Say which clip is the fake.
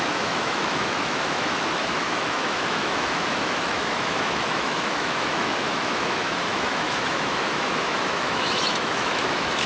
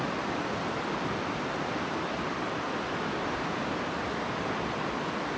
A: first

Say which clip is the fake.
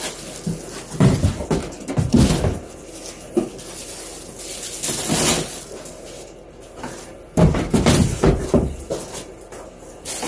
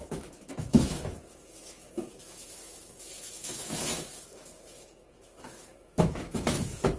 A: second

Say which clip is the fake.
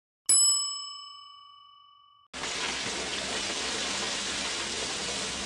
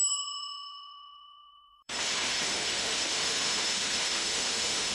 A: second